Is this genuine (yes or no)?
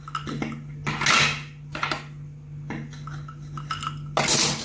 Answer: yes